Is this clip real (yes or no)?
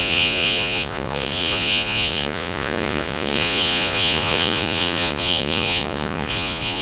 no